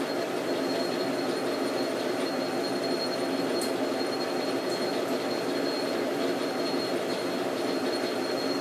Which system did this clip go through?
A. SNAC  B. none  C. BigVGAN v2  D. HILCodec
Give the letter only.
C